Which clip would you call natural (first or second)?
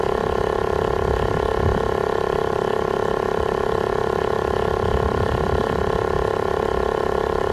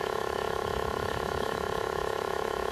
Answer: first